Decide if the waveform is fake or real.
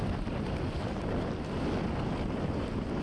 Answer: real